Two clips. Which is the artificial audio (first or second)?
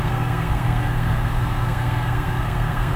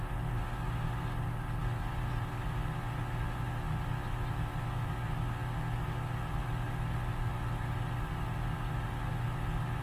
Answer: first